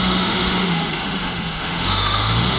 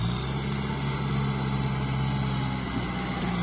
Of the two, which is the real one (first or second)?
second